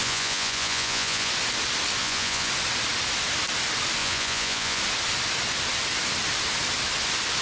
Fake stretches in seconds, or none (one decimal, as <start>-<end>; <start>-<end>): 0.0-1.3; 2.0-2.5; 4.0-4.8

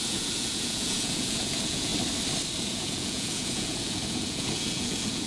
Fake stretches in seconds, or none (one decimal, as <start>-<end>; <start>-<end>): 0.0-1.9; 2.6-5.3

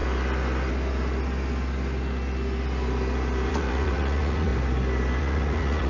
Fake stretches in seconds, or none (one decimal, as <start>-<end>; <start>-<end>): 3.5-4.5; 5.2-5.9

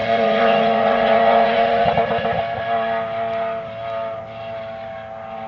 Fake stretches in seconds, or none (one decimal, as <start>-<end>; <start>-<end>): 0.0-1.9

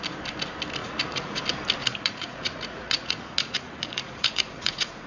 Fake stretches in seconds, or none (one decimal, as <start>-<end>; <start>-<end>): 0.8-1.4; 1.8-5.1

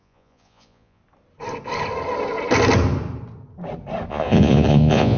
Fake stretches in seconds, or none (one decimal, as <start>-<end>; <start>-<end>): 0.0-1.0; 4.1-5.2